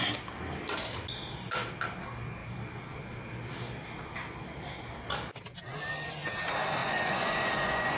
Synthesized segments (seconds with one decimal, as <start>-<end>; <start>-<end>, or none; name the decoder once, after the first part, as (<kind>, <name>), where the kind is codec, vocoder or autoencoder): 6.8-8.0 (vocoder, Vocos)